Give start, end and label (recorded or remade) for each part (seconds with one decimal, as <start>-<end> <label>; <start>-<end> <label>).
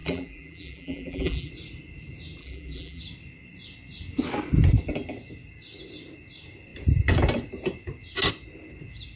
0.0-1.5 remade; 1.5-2.4 recorded; 2.4-3.0 remade; 3.0-9.2 recorded